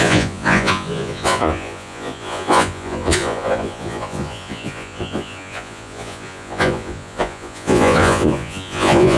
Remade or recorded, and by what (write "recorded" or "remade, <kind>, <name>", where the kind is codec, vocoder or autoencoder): remade, vocoder, Vocos